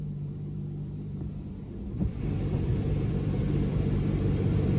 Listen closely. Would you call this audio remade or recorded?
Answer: remade